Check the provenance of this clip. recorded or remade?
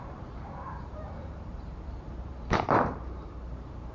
remade